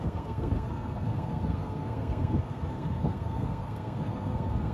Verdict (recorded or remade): remade